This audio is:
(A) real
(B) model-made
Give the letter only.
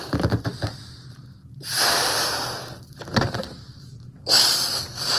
B